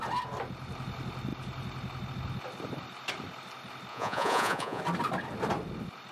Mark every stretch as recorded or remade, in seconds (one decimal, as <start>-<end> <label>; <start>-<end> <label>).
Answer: 0.0-3.9 recorded; 3.9-4.8 remade; 4.8-6.1 recorded